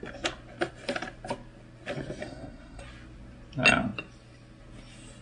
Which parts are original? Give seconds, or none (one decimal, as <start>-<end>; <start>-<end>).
0.0-2.2; 2.8-5.2